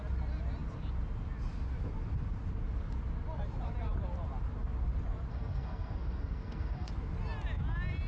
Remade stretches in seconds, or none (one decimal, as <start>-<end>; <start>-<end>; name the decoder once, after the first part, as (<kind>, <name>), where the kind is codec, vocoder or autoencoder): 5.3-6.9 (codec, SNAC)